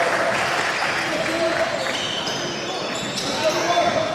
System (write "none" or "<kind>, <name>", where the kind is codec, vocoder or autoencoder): none